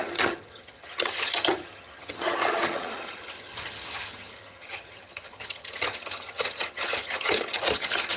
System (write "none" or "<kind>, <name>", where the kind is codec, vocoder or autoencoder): vocoder, HiFi-GAN